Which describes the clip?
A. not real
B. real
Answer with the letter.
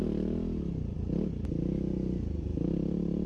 B